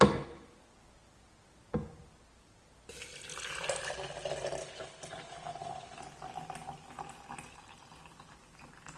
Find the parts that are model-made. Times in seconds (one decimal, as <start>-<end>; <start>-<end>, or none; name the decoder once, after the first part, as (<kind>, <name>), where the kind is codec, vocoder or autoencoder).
4.6-6.0 (codec, HILCodec)